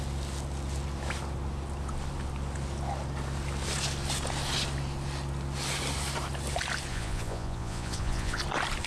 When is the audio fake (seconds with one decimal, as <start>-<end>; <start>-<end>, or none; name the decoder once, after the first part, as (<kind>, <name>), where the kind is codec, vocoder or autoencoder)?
6.9-8.4 (vocoder, Vocos)